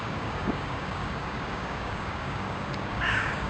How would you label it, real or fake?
fake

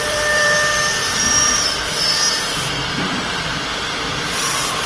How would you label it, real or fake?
fake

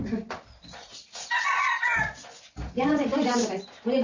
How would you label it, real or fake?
real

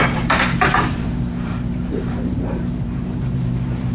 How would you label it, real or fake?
fake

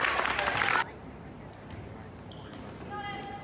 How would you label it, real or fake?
real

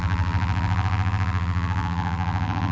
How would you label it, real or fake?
fake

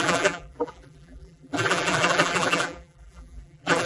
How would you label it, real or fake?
fake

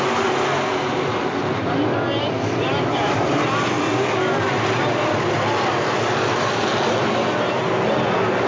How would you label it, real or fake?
real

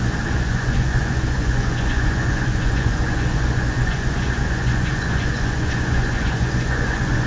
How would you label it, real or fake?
fake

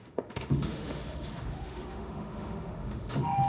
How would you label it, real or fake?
fake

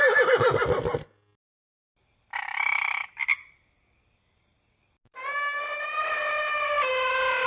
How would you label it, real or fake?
real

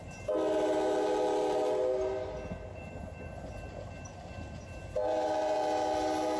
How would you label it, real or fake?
real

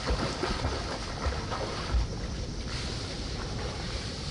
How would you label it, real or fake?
real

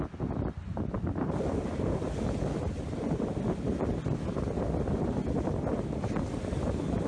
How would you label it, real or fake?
real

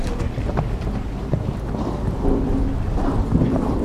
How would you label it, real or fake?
fake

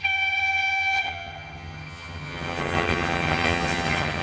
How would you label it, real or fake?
fake